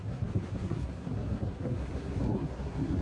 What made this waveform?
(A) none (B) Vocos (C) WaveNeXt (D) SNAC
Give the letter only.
D